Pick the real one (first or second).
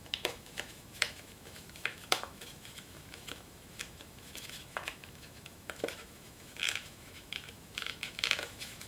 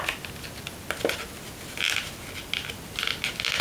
second